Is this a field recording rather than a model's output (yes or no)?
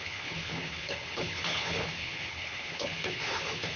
no